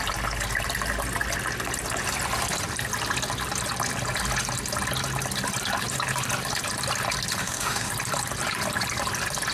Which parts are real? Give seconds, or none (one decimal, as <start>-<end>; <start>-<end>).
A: 0.0-7.4; 7.9-9.5